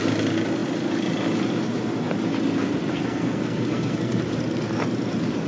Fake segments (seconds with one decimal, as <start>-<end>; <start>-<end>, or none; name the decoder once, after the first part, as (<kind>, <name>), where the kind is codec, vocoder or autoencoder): 2.9-4.2 (codec, SNAC)